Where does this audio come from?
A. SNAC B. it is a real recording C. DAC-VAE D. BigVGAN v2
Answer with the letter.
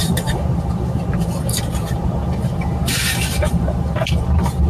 D